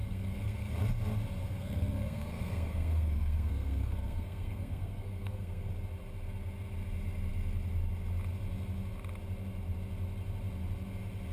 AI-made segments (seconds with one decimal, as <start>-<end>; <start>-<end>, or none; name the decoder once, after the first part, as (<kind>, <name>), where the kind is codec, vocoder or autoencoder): 0.0-0.7 (codec, SNAC); 1.4-5.7